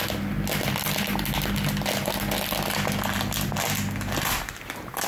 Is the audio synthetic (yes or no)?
no